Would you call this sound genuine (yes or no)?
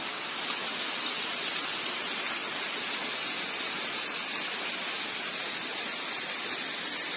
yes